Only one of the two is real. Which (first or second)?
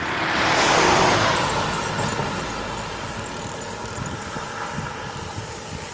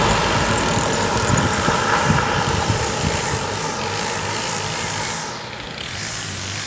first